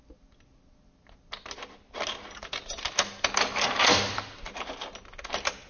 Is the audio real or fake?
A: real